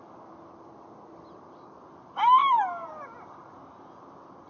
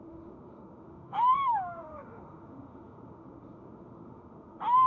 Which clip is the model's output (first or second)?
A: second